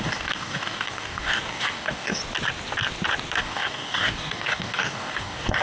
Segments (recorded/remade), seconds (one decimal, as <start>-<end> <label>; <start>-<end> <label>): 0.0-2.2 remade; 2.2-3.4 recorded; 3.4-5.6 remade